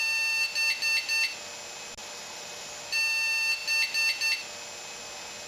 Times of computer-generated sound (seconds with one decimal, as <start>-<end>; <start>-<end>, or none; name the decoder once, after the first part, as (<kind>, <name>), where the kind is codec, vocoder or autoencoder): 2.0-2.6 (vocoder, BigVGAN v2)

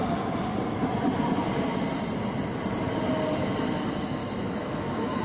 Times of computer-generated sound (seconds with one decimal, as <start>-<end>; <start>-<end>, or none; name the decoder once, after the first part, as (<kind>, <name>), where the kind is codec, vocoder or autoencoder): 4.2-5.2 (autoencoder, DAC-VAE)

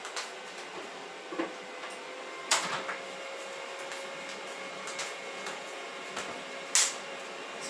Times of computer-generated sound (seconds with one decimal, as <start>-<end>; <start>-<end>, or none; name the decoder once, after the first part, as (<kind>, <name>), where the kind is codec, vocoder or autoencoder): 5.0-5.9 (vocoder, Vocos)

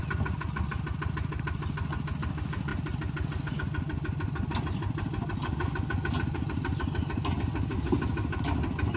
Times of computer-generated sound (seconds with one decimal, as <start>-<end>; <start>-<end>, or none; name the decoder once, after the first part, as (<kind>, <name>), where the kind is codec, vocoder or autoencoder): none

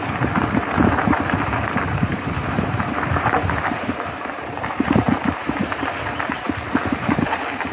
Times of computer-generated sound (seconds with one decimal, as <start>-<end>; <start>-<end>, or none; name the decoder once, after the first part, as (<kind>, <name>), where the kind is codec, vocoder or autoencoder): 2.1-6.7 (vocoder, BigVGAN v2)

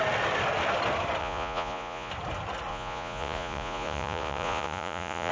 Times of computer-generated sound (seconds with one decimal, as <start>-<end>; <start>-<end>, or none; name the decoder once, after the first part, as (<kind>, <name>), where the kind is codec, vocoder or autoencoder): 1.2-2.1 (vocoder, Vocos); 2.7-5.3